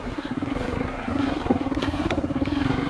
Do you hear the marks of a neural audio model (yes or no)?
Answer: yes